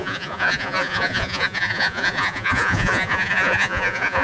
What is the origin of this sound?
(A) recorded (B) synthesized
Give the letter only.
B